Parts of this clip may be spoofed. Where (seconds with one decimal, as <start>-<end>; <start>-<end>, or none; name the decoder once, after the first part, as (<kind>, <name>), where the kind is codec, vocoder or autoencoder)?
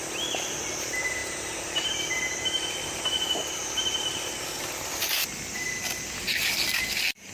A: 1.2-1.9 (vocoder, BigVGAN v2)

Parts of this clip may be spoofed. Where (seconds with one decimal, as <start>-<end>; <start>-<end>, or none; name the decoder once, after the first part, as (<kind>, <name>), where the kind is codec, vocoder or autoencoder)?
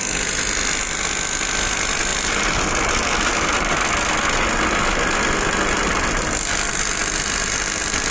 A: 2.1-4.1 (vocoder, BigVGAN v2)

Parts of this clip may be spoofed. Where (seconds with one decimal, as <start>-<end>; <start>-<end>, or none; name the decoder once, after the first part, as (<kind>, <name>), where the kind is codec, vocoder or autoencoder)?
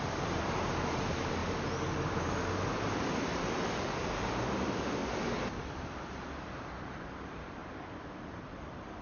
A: 0.0-1.4 (vocoder, BigVGAN v2); 1.9-5.0; 6.4-7.6; 8.2-9.0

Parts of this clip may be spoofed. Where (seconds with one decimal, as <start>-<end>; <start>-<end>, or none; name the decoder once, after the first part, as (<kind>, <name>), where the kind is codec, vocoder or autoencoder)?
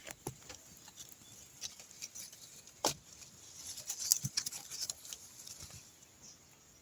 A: none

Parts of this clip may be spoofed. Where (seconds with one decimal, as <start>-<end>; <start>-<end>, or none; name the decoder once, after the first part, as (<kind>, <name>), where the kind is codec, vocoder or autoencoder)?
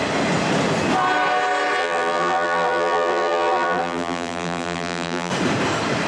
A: 1.8-5.3 (vocoder, BigVGAN v2)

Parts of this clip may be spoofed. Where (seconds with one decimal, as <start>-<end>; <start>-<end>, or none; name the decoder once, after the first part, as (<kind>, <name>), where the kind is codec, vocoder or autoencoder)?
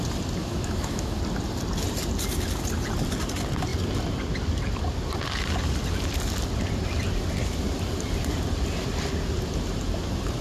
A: 0.4-1.2 (autoencoder, DAC-VAE)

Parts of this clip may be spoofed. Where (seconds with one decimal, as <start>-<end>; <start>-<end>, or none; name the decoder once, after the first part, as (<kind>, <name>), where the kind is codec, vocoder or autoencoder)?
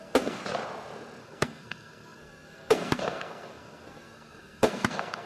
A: 0.0-0.4 (codec, SNAC); 1.2-5.3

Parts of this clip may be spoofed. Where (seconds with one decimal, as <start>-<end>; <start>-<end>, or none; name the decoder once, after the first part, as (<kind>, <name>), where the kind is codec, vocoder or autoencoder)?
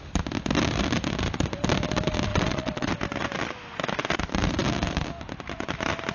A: 2.3-2.9 (vocoder, WaveNeXt)